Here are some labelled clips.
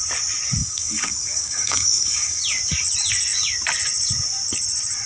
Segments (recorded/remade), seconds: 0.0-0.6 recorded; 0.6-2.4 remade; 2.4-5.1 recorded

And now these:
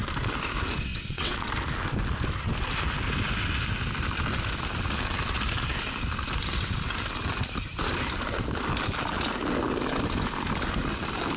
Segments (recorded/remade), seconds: 0.0-0.9 recorded; 0.9-1.5 remade; 1.5-11.4 recorded

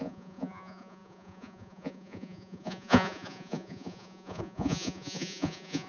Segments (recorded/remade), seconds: 0.0-5.9 remade

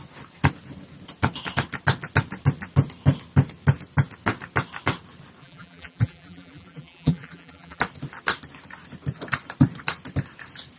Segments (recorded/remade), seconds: 0.0-5.4 recorded; 5.4-7.8 remade; 7.8-10.8 recorded

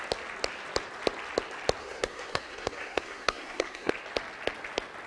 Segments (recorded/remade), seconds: 0.0-1.8 recorded; 1.8-3.9 remade; 3.9-5.1 recorded

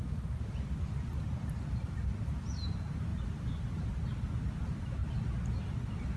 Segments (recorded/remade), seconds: 0.0-6.2 recorded

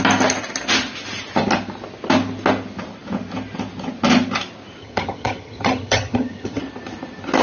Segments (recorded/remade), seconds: 0.0-4.8 recorded; 4.8-6.6 remade; 6.6-7.4 recorded